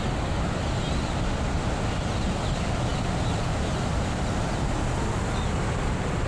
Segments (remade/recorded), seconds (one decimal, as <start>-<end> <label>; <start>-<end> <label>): 0.0-6.3 recorded